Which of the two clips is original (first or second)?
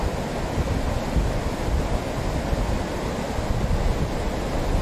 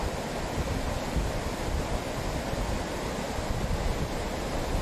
first